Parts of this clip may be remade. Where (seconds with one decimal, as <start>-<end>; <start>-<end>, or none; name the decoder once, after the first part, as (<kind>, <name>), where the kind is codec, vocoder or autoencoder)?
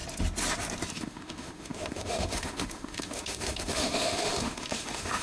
0.9-5.2 (autoencoder, DAC-VAE)